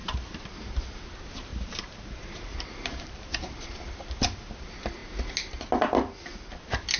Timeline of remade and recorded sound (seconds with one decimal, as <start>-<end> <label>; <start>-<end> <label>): 0.0-0.8 remade; 0.8-1.5 recorded; 1.5-3.5 remade; 3.5-7.0 recorded